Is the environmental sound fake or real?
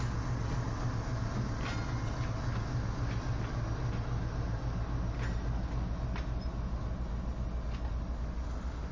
real